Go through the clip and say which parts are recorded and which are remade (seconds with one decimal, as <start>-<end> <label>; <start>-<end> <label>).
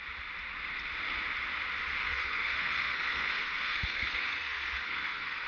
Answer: 0.0-2.0 recorded; 2.0-5.5 remade